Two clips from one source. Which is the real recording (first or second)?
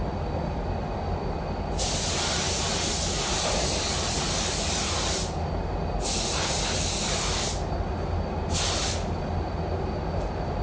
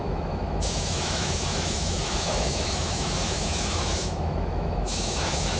first